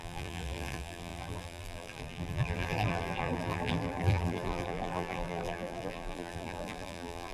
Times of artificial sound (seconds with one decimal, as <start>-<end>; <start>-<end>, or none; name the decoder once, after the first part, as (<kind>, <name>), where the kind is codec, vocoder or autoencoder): 0.0-7.3 (vocoder, BigVGAN v2)